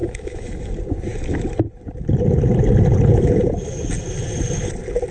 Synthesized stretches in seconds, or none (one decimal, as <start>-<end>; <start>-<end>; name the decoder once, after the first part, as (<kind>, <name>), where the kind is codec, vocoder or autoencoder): 0.0-0.7 (autoencoder, DAC-VAE)